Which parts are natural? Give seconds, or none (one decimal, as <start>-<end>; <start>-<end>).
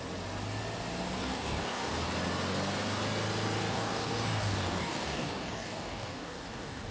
0.0-1.2; 1.9-3.7